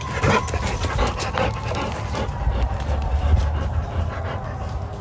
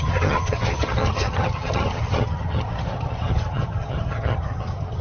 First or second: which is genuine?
first